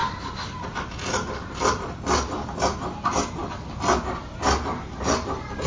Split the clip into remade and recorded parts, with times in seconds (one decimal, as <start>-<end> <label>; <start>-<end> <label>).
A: 0.0-5.7 recorded